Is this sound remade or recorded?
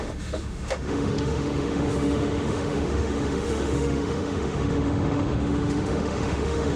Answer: remade